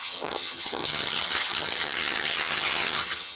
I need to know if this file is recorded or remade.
remade